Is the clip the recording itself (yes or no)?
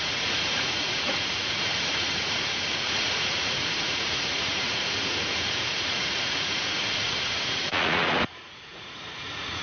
no